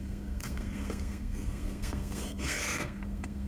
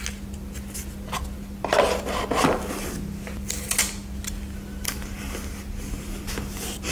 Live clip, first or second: second